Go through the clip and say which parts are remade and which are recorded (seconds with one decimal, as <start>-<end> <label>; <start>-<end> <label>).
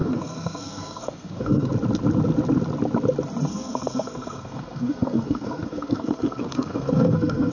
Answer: 0.0-1.7 remade; 1.7-3.5 recorded; 3.5-7.5 remade